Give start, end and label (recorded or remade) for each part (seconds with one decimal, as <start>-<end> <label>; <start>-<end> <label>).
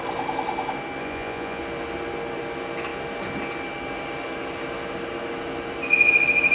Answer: 0.0-1.0 recorded; 1.0-1.6 remade; 1.6-6.5 recorded